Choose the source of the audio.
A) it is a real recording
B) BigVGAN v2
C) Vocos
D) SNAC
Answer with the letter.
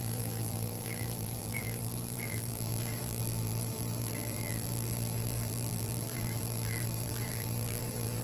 B